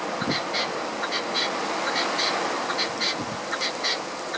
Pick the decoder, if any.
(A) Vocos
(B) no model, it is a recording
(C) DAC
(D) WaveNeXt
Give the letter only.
B